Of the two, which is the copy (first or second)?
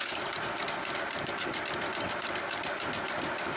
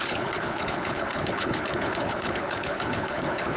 second